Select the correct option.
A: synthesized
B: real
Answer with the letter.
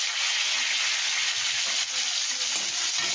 B